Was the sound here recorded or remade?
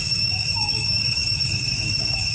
remade